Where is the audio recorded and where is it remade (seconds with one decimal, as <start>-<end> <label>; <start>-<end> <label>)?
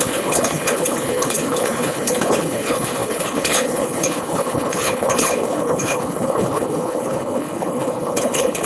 0.0-8.7 remade